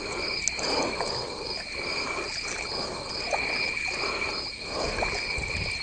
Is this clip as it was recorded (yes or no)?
yes